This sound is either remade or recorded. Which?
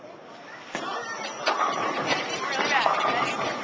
recorded